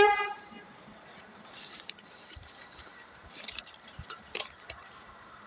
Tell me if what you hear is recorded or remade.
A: remade